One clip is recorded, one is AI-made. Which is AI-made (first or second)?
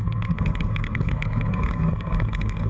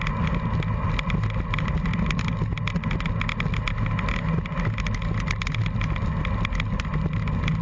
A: first